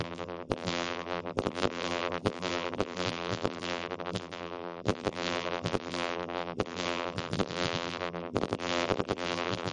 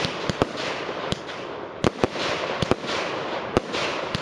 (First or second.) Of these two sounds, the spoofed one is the first